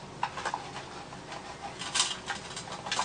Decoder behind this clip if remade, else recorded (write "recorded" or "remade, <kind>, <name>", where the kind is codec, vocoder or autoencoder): recorded